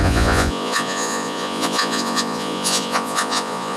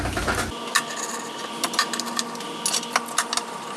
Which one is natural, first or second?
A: second